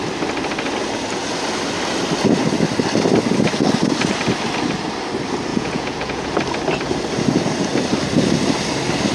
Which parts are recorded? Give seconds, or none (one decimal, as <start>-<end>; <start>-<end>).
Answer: 0.0-5.5; 6.3-9.1